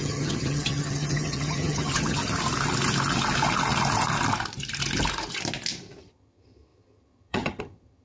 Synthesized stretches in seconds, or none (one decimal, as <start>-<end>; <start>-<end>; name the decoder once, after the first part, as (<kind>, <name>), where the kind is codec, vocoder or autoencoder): 0.0-2.2 (vocoder, HiFi-GAN); 6.0-8.0